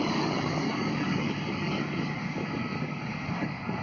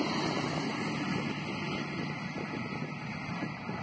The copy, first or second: first